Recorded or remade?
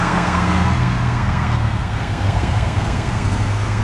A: remade